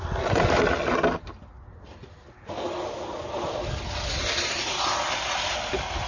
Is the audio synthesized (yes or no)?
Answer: no